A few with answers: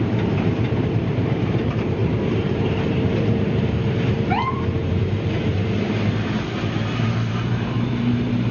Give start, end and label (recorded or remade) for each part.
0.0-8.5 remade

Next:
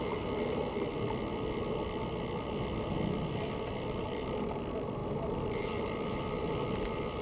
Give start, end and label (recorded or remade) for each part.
0.0-7.2 recorded

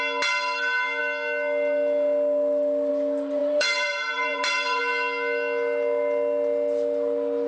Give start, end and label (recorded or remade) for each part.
0.0-3.4 recorded; 3.4-4.8 remade; 4.8-7.5 recorded

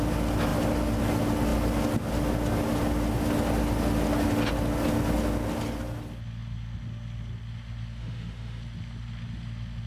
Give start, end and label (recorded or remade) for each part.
0.0-8.0 recorded; 8.0-8.6 remade; 8.6-9.9 recorded

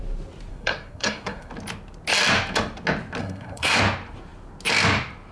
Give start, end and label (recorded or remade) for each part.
0.0-0.5 recorded; 0.5-1.5 remade; 1.5-3.2 recorded; 3.2-3.8 remade; 3.8-5.3 recorded

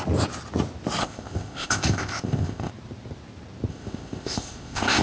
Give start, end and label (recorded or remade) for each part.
0.0-1.0 recorded; 1.0-2.7 remade; 2.7-3.7 recorded; 3.7-5.0 remade

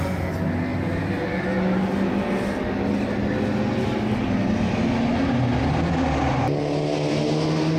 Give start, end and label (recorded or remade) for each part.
0.0-7.8 recorded

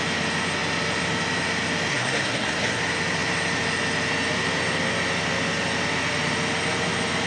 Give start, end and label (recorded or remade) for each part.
0.0-1.9 recorded; 1.9-2.8 remade; 2.8-7.3 recorded